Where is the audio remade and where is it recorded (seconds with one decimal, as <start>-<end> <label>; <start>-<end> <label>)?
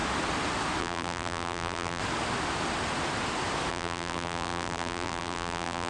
0.0-0.8 recorded; 0.8-2.0 remade; 2.0-3.7 recorded; 3.7-5.9 remade